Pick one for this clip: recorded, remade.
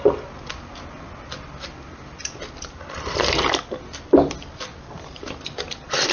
recorded